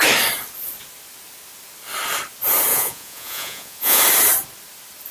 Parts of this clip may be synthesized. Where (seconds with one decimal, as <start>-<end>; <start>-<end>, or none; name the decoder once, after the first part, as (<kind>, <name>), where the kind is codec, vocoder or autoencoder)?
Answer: 2.7-4.0 (vocoder, Vocos)